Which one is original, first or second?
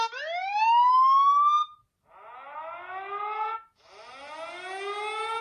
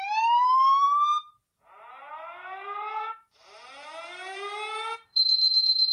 first